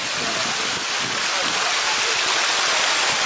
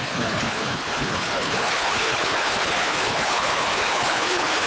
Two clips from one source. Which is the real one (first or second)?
first